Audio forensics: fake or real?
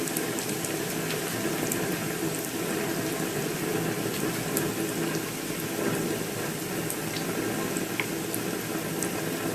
real